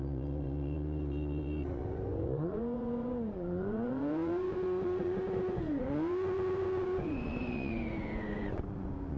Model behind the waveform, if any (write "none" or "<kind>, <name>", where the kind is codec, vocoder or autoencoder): vocoder, Vocos